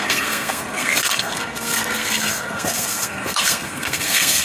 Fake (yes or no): yes